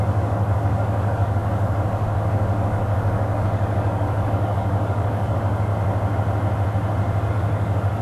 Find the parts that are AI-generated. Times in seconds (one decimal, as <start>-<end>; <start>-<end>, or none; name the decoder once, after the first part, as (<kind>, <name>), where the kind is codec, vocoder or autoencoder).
0.0-5.7 (codec, DAC); 7.3-8.0